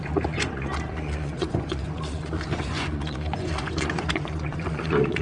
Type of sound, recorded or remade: remade